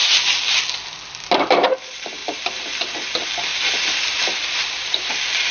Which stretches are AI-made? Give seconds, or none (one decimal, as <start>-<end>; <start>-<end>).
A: 2.2-3.1; 3.5-5.1

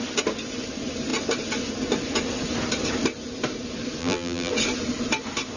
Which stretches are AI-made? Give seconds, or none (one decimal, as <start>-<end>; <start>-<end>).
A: 4.0-4.5

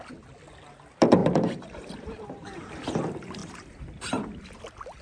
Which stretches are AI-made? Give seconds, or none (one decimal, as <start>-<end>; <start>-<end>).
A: 1.2-2.7; 3.4-4.6

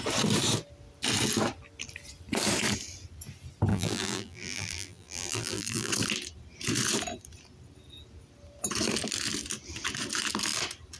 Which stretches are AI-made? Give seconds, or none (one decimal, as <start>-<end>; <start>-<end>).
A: 3.7-5.9

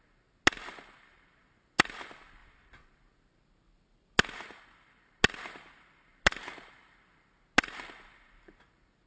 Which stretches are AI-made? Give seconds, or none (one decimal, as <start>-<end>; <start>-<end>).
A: none

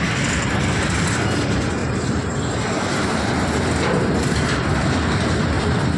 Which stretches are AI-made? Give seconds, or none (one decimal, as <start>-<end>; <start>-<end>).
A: 1.8-3.3

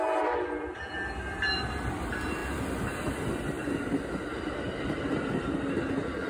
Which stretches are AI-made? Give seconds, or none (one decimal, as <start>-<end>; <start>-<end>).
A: none